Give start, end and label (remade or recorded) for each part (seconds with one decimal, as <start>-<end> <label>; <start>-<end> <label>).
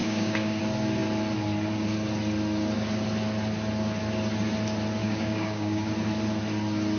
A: 0.0-0.6 remade; 0.6-5.0 recorded; 5.0-5.9 remade; 5.9-7.0 recorded